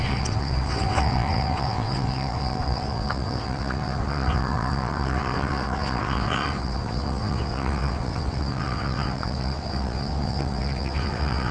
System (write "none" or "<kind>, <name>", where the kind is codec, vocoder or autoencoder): vocoder, WaveNeXt